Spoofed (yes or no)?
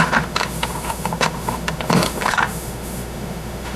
yes